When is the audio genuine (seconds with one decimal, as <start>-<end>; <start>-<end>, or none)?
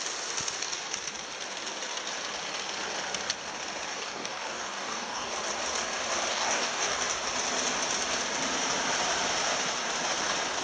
0.0-3.9; 5.3-6.3; 7.0-10.6